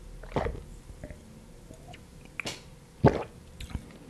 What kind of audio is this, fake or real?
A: real